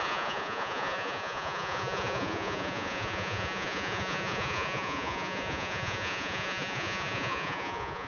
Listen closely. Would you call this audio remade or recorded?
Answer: remade